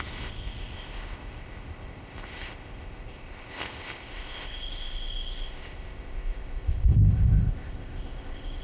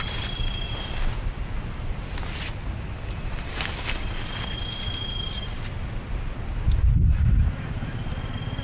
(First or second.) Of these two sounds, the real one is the second